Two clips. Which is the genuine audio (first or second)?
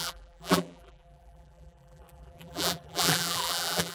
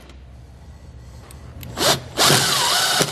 second